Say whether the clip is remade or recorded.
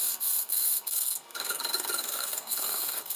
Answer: remade